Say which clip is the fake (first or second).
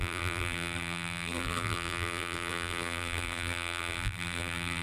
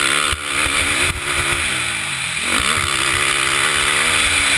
first